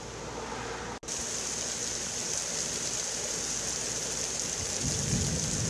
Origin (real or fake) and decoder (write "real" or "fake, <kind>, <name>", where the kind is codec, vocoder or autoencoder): real